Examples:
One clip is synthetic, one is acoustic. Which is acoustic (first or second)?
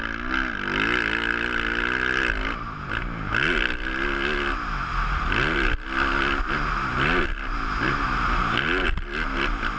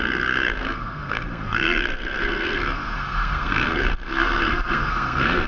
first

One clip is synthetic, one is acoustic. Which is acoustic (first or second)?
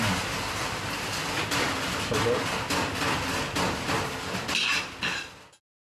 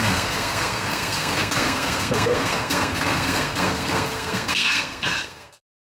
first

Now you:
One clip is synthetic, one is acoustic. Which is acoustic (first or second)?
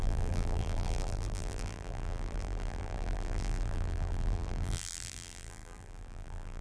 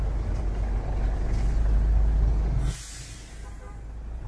second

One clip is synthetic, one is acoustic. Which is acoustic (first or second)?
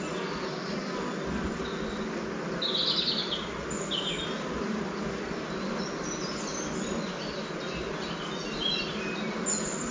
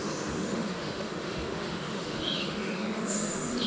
first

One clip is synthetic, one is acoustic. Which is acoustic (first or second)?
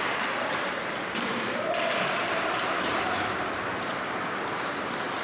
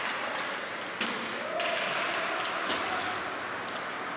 second